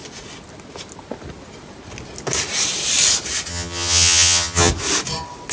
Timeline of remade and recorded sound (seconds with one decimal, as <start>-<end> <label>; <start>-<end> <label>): 0.0-3.5 recorded; 3.5-4.7 remade; 4.7-5.5 recorded